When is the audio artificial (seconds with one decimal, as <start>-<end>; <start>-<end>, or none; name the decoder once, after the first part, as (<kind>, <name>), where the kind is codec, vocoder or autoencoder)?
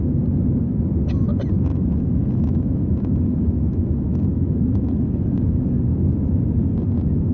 1.7-5.6 (autoencoder, DAC-VAE)